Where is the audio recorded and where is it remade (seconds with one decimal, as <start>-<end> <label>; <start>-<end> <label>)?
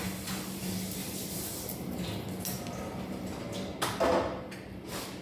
0.0-5.2 recorded